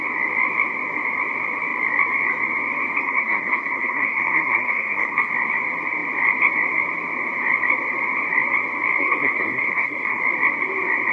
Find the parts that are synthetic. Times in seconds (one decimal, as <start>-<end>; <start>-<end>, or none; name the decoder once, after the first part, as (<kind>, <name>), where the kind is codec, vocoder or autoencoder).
3.0-5.3 (codec, SNAC); 9.0-10.2